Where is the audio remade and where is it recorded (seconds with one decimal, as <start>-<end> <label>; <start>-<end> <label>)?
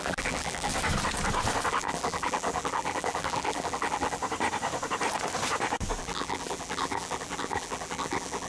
0.0-0.7 remade; 0.7-1.7 recorded; 1.7-4.2 remade; 4.2-6.0 recorded; 6.0-8.5 remade